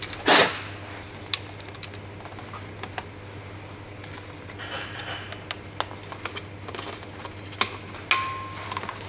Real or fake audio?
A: real